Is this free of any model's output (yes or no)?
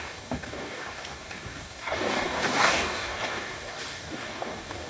no